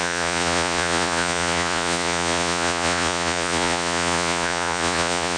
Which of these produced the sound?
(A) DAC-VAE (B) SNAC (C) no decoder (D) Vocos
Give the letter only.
D